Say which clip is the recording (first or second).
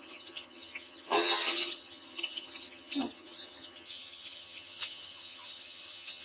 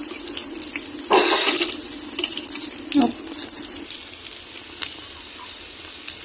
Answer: second